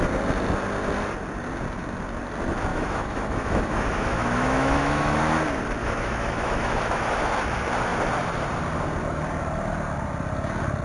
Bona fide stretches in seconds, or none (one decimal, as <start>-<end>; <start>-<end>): 0.0-2.7; 5.2-5.8; 7.3-10.8

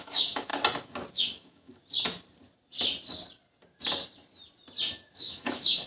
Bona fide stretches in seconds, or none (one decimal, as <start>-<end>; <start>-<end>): 0.5-1.1; 1.7-5.2

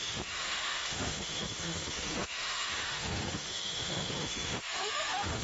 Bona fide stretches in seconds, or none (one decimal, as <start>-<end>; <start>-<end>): none

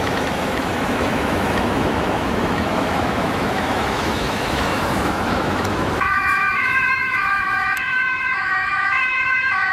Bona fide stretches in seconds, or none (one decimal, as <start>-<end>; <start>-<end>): none

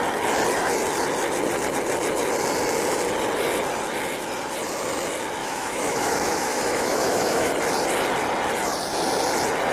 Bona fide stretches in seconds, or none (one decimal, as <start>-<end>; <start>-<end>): 0.0-5.4; 7.5-9.7

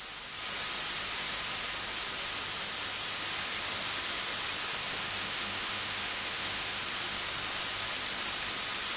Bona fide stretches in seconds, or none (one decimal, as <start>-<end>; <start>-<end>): 0.0-4.9; 6.8-9.0